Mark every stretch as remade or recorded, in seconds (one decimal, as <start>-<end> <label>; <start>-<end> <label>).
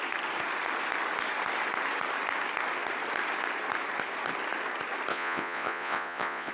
0.0-5.1 recorded; 5.1-6.5 remade